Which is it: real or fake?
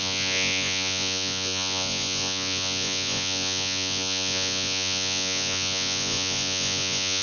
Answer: fake